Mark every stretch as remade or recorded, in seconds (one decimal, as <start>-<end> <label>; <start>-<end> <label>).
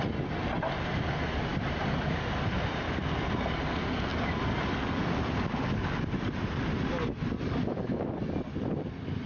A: 0.0-9.3 recorded